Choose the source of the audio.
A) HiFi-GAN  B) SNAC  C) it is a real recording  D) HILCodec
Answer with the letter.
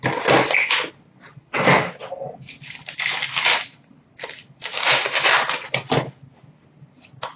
C